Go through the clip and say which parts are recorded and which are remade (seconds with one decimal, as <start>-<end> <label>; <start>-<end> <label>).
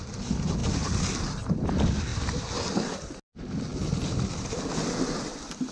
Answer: 0.0-5.7 recorded